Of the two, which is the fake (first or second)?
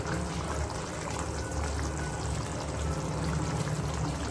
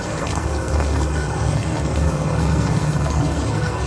second